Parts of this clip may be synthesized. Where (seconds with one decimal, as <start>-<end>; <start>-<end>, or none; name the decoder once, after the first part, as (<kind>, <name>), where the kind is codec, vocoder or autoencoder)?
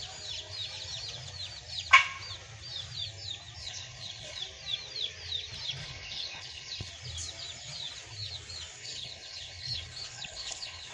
3.6-4.4 (codec, HILCodec); 5.8-6.9; 8.8-10.9